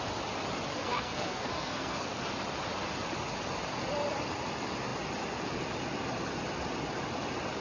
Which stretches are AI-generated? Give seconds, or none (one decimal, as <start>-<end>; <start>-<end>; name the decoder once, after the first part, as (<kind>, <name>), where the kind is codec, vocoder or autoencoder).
0.7-2.2 (codec, SNAC)